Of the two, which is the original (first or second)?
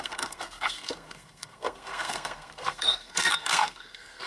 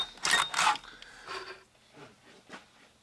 second